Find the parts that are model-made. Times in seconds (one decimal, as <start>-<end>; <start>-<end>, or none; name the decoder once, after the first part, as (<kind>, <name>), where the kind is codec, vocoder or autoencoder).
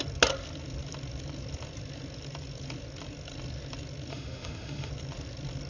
4.1-4.9 (autoencoder, DAC-VAE)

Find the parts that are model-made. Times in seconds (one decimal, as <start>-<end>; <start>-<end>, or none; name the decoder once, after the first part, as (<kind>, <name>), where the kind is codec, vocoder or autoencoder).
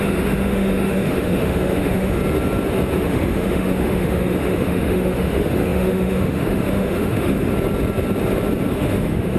0.0-2.2 (autoencoder, DAC-VAE); 3.0-7.5; 8.7-9.4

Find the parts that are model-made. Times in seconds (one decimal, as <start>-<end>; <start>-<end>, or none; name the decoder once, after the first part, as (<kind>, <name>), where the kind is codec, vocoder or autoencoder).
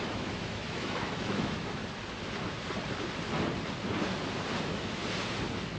0.0-1.8 (autoencoder, DAC-VAE); 4.6-5.0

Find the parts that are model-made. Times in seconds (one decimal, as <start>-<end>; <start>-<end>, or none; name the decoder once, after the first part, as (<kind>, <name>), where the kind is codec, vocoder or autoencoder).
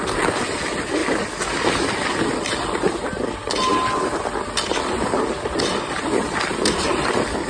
none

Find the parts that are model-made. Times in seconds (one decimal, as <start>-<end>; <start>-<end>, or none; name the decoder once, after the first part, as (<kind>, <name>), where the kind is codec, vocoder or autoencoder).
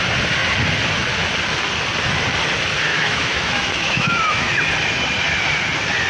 2.9-4.5 (autoencoder, DAC-VAE)